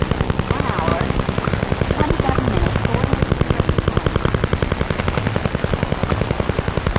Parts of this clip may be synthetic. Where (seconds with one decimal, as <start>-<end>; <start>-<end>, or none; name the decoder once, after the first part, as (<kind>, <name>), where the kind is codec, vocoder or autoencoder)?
6.0-7.0 (vocoder, BigVGAN v2)